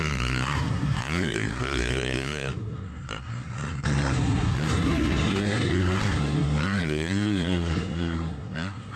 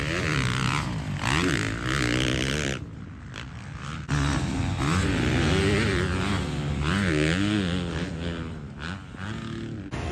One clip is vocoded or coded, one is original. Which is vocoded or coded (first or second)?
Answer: first